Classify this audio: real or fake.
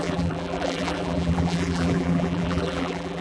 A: fake